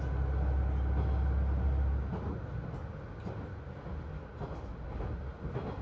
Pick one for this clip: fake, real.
real